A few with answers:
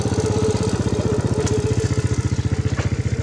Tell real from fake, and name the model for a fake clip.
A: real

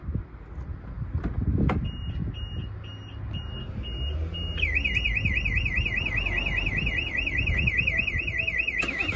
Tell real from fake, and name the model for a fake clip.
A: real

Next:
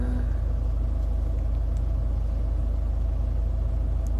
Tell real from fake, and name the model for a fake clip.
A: real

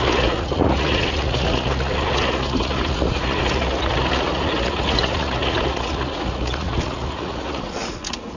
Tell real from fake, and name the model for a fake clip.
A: fake, vocoder, Vocos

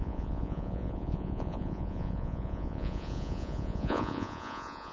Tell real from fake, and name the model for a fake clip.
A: fake, vocoder, Vocos